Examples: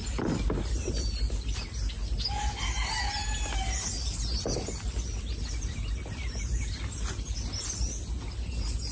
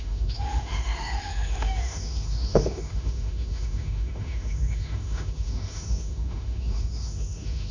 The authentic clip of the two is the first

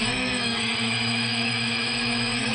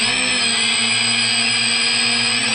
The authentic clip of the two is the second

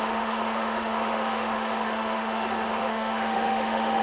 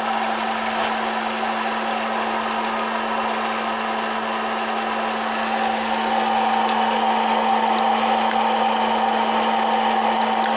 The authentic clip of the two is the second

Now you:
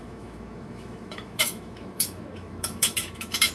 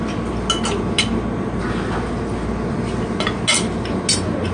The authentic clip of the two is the second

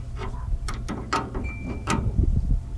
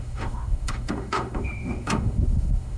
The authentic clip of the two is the first